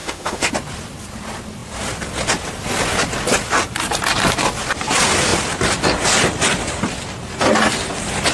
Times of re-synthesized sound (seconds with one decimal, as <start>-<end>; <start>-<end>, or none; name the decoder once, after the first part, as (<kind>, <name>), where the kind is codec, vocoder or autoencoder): 0.0-0.5 (autoencoder, DAC-VAE)